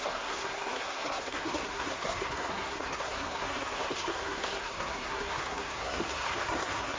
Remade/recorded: remade